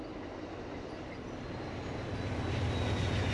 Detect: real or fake real